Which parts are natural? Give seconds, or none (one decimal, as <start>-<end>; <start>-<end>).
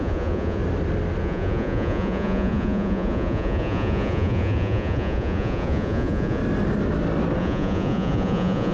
0.6-1.2; 6.4-7.4